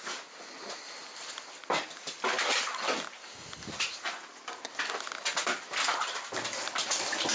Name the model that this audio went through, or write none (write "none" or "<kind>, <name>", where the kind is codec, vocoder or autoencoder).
none